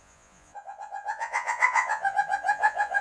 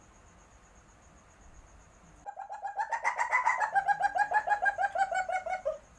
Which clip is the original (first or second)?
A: second